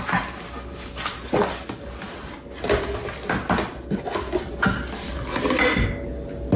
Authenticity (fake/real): real